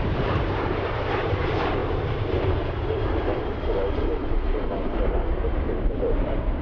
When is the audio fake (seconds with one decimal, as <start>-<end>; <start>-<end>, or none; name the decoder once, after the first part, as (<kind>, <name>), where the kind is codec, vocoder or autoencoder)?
0.0-1.8 (vocoder, BigVGAN v2); 2.4-6.6